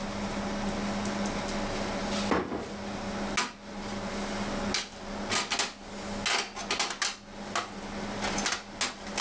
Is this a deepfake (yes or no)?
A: no